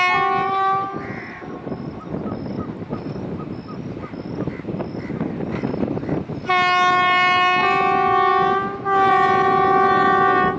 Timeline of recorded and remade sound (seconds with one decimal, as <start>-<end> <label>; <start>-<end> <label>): 0.0-10.6 recorded